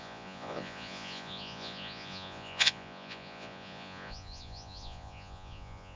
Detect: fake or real fake